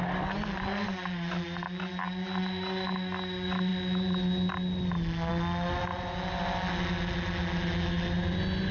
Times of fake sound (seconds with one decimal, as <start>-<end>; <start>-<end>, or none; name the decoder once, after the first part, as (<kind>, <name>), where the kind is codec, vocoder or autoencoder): none